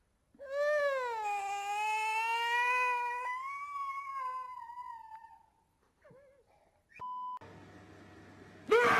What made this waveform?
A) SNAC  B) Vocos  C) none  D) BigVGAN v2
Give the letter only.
C